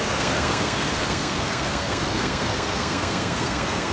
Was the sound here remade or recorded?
remade